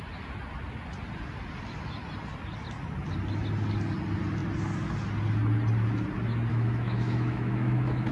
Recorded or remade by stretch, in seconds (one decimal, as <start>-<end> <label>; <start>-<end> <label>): 0.0-6.5 recorded; 6.5-8.1 remade